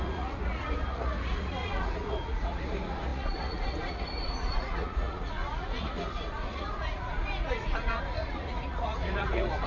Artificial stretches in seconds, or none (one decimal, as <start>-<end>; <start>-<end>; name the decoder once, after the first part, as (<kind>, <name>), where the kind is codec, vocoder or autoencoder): 0.0-9.7 (vocoder, Vocos)